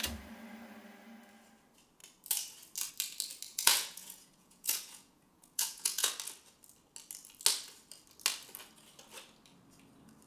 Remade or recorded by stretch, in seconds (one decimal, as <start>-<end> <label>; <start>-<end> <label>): 0.0-3.5 recorded; 3.5-6.1 remade; 6.1-10.3 recorded